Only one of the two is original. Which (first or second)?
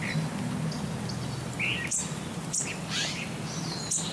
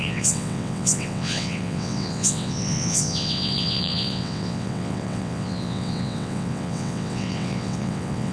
first